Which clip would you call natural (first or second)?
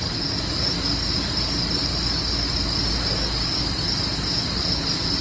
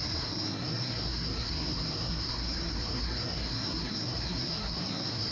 first